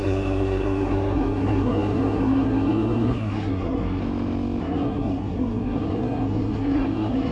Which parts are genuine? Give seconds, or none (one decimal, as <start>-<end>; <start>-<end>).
4.0-4.6